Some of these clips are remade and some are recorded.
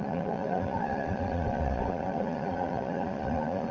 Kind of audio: remade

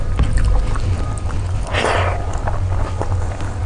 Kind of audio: recorded